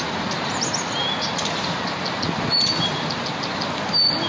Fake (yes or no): no